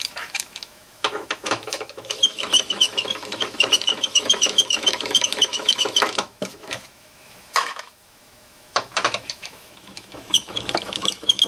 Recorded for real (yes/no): no